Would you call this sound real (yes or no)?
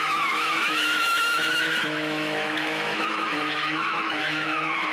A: no